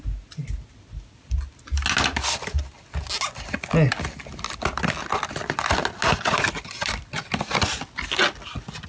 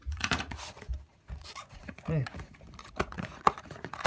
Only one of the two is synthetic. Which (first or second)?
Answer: second